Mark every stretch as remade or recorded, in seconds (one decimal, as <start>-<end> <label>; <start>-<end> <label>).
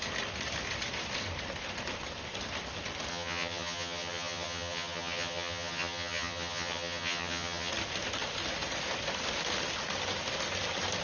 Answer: 0.0-3.1 recorded; 3.1-7.7 remade; 7.7-11.0 recorded